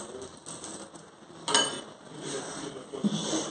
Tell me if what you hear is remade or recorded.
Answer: recorded